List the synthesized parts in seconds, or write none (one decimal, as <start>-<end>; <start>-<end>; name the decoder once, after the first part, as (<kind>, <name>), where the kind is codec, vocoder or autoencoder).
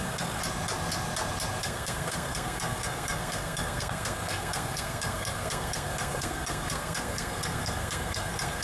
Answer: 0.0-0.4 (codec, SNAC); 1.6-8.6